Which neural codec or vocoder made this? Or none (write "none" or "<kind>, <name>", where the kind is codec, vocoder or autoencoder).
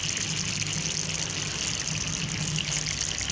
none